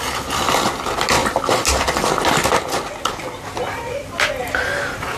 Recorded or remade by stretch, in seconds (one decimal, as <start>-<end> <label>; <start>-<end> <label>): 0.0-5.2 recorded